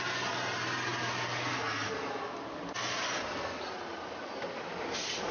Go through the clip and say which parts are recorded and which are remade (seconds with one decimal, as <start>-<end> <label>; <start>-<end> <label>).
0.0-5.3 recorded